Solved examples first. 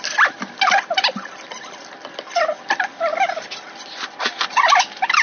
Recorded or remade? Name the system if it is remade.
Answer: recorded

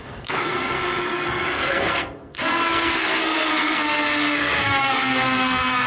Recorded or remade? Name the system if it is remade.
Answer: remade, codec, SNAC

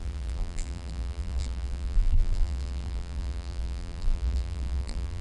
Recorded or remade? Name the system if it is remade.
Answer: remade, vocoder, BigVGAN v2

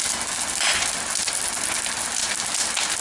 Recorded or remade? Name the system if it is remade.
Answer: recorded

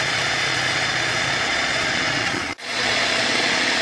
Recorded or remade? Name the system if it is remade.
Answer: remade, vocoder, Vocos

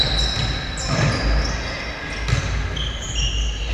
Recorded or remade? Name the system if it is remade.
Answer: recorded